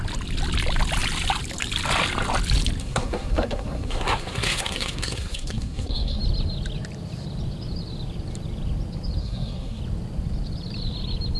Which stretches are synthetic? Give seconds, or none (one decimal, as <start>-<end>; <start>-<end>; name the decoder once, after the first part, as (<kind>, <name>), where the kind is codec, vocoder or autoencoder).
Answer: 2.8-6.2 (codec, SNAC); 9.2-9.8